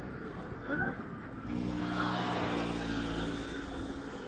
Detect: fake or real fake